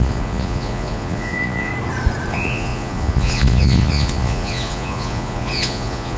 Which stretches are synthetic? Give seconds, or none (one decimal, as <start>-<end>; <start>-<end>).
0.0-1.7; 2.3-6.2